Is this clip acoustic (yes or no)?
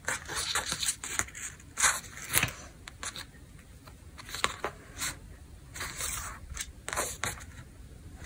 yes